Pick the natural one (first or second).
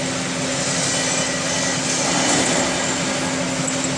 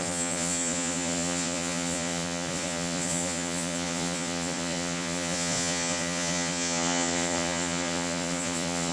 first